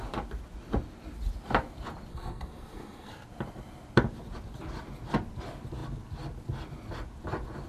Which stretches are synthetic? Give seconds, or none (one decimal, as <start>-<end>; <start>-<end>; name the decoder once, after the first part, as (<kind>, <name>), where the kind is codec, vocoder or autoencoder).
2.1-3.1 (codec, SNAC)